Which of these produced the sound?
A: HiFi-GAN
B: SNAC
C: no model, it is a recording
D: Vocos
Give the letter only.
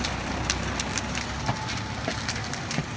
C